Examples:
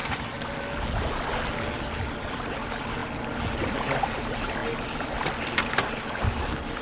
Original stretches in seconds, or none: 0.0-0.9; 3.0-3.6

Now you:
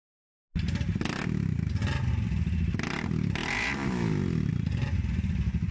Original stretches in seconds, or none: 0.0-5.7

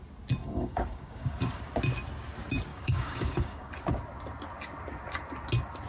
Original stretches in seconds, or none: 0.0-0.4; 1.6-2.7; 3.7-5.9

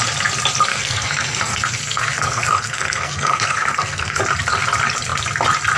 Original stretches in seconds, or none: 0.0-0.7; 4.2-5.8

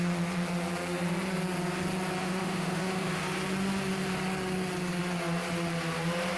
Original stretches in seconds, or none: 0.0-2.2; 3.2-6.4